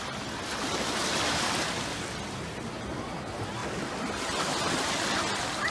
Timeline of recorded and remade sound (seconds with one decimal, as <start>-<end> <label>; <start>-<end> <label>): 0.0-5.7 recorded